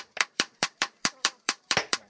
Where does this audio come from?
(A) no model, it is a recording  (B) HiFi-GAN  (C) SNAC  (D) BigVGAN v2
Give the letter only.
D